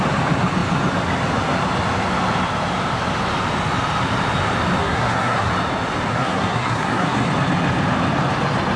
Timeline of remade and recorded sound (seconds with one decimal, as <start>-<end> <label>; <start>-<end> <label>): 0.0-4.8 recorded; 4.8-5.5 remade; 5.5-6.1 recorded; 6.1-7.3 remade; 7.3-8.8 recorded